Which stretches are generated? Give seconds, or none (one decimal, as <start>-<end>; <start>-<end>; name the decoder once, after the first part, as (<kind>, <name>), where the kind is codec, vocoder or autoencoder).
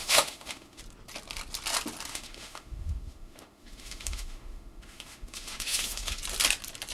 0.0-0.8 (autoencoder, DAC-VAE); 2.1-6.2